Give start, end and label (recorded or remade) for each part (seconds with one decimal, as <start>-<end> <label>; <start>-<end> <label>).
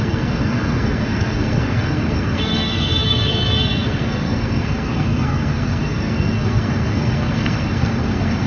0.0-8.5 remade